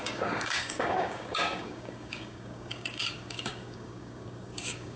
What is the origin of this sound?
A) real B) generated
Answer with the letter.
B